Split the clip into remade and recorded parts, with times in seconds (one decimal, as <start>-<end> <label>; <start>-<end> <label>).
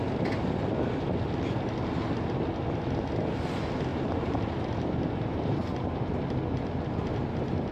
0.0-3.9 recorded; 3.9-5.6 remade; 5.6-7.7 recorded